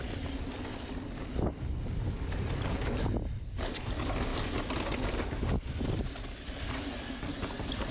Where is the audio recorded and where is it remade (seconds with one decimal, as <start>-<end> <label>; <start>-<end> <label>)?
0.0-7.9 recorded